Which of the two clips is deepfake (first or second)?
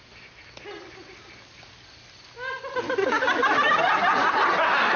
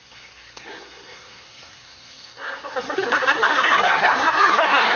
second